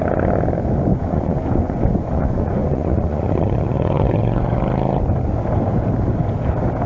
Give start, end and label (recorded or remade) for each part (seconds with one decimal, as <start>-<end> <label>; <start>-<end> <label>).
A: 0.0-0.9 recorded; 0.9-4.6 remade; 4.6-6.9 recorded